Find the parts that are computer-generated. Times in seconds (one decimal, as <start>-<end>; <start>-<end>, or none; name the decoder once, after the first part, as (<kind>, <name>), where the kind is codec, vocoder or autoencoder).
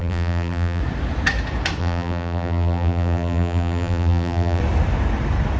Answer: 0.0-0.8 (vocoder, BigVGAN v2); 1.8-4.6